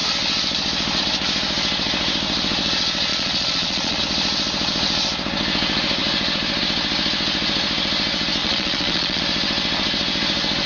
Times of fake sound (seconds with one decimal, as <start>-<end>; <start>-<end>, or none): 3.1-4.0; 8.4-9.2